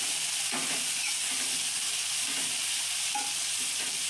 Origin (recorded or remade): remade